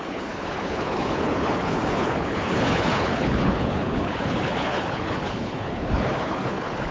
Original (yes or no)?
no